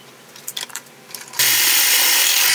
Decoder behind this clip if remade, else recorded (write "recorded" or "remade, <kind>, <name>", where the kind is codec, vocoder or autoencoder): remade, vocoder, BigVGAN v2